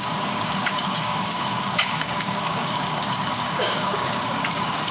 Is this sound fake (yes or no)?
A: yes